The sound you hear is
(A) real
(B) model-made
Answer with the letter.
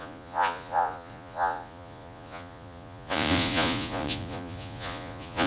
B